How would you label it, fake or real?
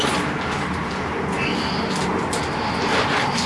real